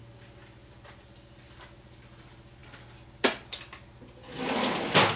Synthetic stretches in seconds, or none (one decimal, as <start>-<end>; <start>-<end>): none